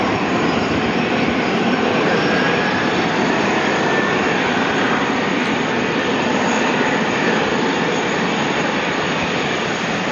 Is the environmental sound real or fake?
fake